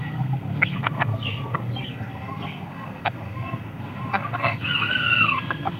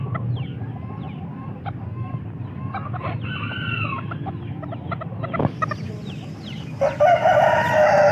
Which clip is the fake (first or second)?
first